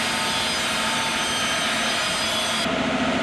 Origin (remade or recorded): recorded